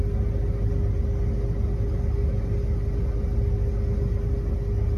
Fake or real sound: real